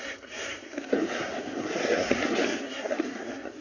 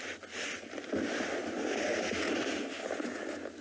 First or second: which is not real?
first